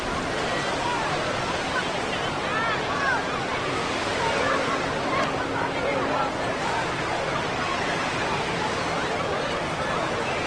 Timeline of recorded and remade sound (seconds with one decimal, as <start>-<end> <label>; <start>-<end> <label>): 0.0-10.5 recorded